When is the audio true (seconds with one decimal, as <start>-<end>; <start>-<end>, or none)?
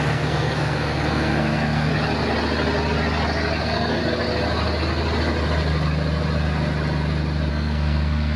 1.9-3.6; 4.0-7.5